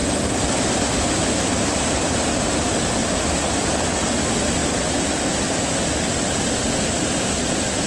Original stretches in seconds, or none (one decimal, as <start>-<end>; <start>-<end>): 2.8-4.6; 5.5-7.9